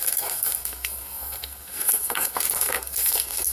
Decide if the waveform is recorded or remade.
remade